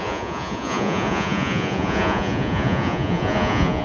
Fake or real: fake